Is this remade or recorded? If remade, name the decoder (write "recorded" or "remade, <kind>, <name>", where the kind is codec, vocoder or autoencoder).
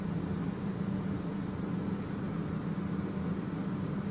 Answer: recorded